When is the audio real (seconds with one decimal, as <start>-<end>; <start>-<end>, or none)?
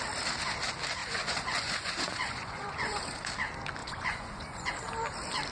0.0-1.0; 3.0-3.8; 4.7-5.5